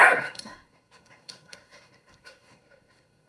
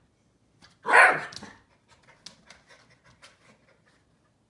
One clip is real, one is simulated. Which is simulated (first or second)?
first